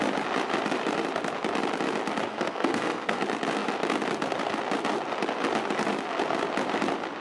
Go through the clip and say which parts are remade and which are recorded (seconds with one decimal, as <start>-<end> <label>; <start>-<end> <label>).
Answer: 0.0-2.3 recorded; 2.3-3.2 remade; 3.2-7.2 recorded